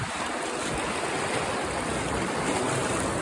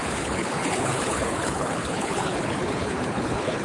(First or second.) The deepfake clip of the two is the second